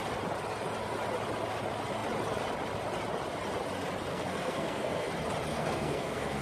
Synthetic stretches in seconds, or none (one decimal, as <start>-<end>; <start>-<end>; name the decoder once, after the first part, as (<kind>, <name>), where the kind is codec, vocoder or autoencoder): 4.1-5.1 (codec, SNAC); 5.5-6.4